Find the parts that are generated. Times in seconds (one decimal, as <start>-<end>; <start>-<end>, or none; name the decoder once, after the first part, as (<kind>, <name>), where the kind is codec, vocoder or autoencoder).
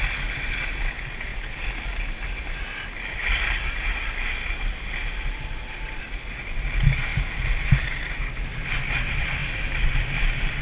none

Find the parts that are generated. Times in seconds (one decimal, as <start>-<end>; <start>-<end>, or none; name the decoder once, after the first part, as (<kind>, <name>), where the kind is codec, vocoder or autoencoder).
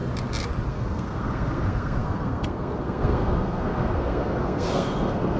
0.7-5.4 (codec, SNAC)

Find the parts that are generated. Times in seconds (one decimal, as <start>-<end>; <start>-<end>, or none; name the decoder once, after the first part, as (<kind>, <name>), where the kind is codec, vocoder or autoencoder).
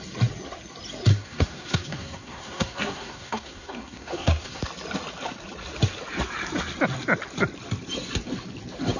1.1-4.6 (codec, SNAC)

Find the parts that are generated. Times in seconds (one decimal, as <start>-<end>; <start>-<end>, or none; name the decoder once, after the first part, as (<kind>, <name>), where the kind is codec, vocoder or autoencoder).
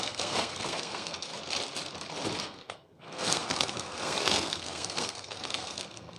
0.0-1.3 (codec, SNAC); 2.4-6.2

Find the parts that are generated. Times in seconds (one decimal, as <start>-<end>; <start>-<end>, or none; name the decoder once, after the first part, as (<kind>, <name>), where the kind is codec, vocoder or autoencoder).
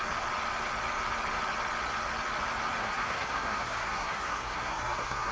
2.8-5.3 (codec, SNAC)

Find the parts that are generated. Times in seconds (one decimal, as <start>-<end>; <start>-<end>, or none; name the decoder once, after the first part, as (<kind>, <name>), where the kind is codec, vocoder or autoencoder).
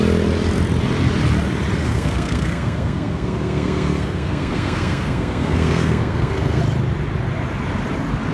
1.8-6.6 (codec, SNAC)